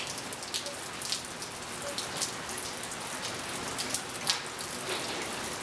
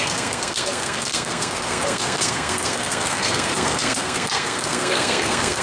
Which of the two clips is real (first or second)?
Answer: first